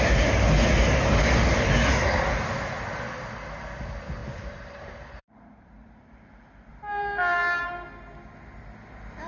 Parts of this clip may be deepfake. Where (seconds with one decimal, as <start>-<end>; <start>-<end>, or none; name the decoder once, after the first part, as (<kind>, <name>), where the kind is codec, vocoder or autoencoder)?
4.2-6.7 (vocoder, BigVGAN v2)